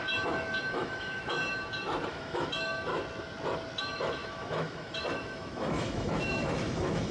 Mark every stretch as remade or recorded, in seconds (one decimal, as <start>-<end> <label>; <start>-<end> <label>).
0.0-1.4 remade; 1.4-2.1 recorded; 2.1-2.9 remade; 2.9-3.8 recorded; 3.8-7.1 remade